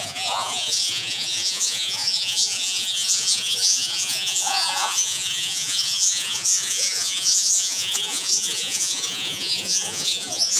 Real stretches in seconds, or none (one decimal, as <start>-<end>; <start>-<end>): none